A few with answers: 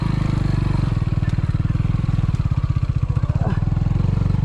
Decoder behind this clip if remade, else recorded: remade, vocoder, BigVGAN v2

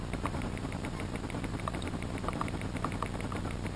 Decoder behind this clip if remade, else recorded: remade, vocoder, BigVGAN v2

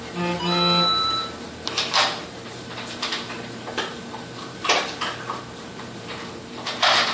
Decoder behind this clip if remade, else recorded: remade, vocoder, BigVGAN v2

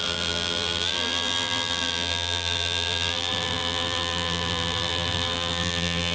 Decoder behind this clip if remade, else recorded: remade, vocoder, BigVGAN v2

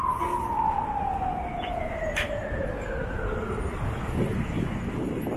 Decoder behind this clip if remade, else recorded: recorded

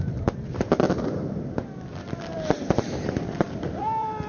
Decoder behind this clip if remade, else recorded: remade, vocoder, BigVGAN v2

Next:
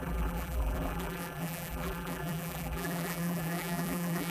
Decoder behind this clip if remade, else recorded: remade, vocoder, BigVGAN v2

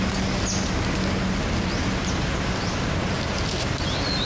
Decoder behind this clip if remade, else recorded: recorded